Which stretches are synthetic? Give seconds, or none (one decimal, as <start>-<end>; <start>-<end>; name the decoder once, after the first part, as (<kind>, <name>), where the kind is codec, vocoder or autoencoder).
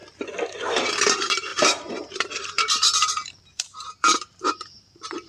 0.9-5.3 (vocoder, BigVGAN v2)